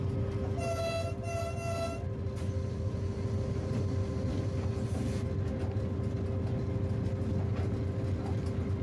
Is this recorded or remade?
recorded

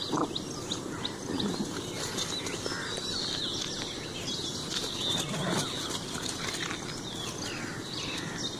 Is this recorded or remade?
recorded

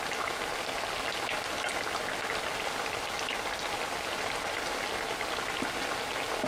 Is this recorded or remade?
recorded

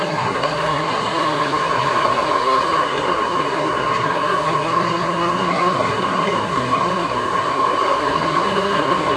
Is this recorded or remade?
remade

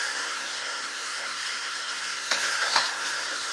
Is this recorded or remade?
remade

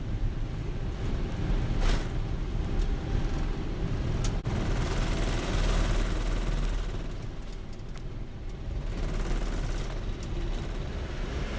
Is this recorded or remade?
recorded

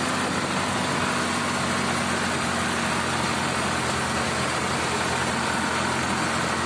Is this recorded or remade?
recorded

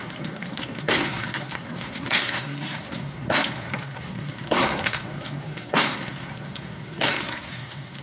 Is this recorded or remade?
remade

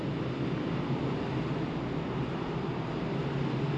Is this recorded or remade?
recorded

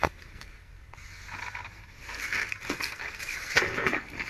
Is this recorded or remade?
remade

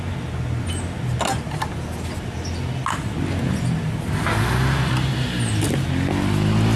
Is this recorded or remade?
recorded